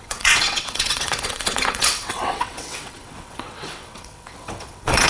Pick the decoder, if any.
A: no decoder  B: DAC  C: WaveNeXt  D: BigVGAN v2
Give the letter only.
C